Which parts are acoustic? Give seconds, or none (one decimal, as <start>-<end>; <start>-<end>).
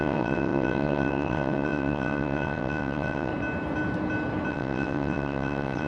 3.3-4.5